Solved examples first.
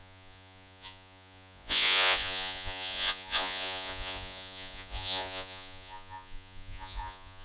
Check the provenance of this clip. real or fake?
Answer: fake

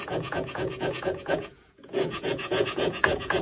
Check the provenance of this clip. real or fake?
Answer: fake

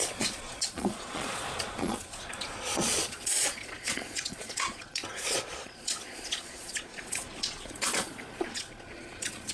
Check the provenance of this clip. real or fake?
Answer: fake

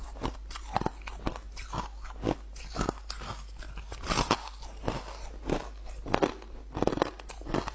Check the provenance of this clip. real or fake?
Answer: real